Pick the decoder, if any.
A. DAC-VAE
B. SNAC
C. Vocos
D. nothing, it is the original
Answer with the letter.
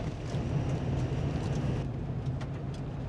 D